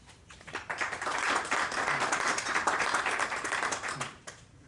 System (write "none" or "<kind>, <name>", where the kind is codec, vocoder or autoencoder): vocoder, BigVGAN v2